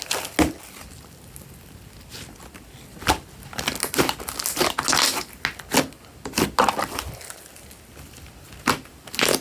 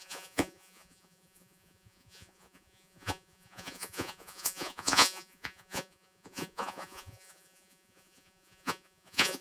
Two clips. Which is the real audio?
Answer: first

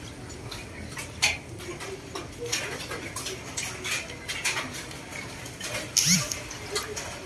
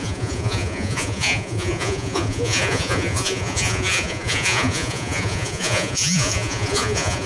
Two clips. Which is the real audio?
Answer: first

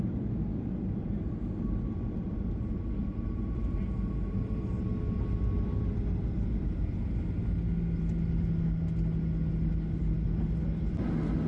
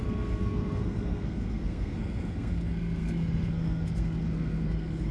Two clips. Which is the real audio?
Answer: first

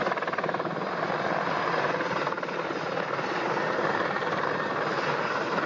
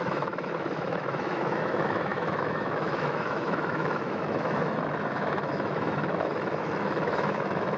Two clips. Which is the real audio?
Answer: first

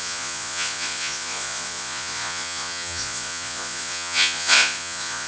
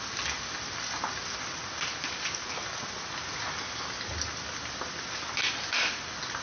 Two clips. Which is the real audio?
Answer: second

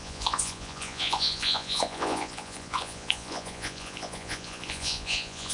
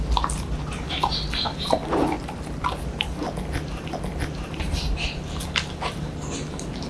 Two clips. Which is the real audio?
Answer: second